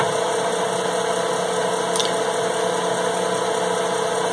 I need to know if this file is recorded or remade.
recorded